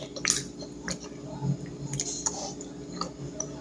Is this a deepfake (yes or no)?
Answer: no